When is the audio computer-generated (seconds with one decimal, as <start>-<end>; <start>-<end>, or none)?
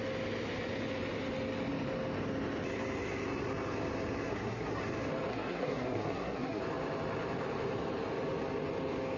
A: 4.3-4.8; 5.3-6.6